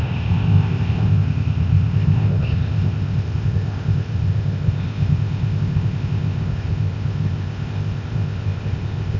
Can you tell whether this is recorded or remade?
remade